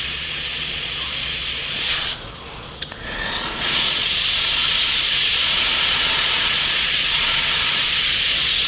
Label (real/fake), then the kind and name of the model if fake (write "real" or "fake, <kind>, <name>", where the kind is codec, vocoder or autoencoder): fake, vocoder, Vocos